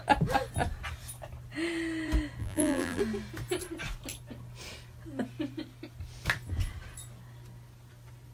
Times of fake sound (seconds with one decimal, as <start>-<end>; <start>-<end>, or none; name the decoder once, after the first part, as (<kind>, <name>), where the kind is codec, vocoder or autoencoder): 2.4-3.0 (vocoder, BigVGAN v2)